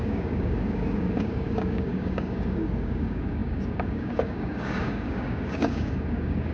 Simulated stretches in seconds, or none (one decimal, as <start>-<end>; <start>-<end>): 0.0-6.5